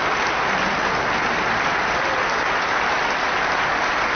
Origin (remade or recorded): recorded